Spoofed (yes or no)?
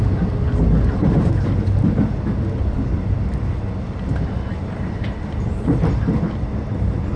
no